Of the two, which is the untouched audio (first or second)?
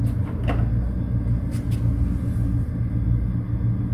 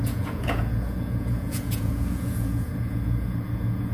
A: first